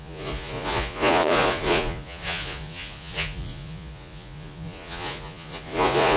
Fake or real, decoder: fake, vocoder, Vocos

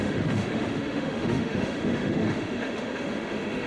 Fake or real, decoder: fake, autoencoder, DAC-VAE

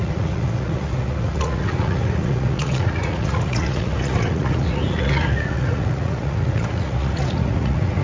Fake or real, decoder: fake, vocoder, Vocos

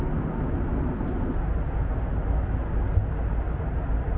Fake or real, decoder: real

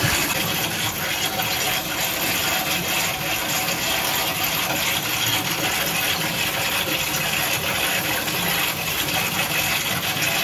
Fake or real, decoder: real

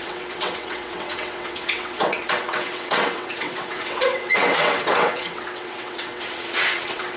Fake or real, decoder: fake, vocoder, WaveNeXt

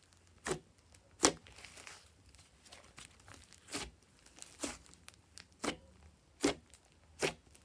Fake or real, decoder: real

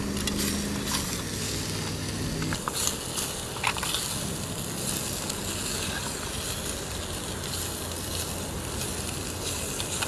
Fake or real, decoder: real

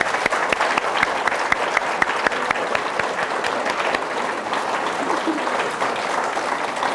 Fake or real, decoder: real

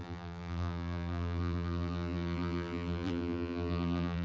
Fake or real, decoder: fake, vocoder, BigVGAN v2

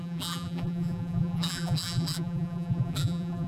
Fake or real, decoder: fake, vocoder, BigVGAN v2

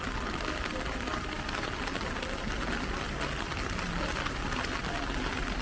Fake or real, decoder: real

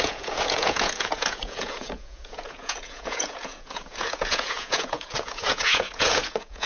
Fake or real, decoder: fake, vocoder, Vocos